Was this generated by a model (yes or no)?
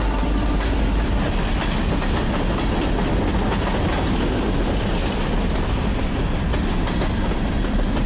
no